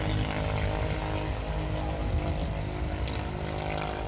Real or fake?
real